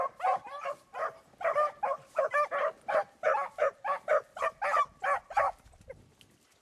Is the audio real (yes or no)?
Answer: yes